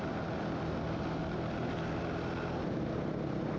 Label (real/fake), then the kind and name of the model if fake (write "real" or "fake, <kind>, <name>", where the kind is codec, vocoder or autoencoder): real